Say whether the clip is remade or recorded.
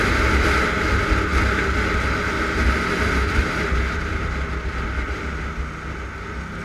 recorded